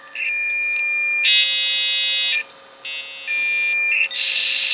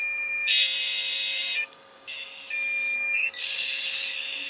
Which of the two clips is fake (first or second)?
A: second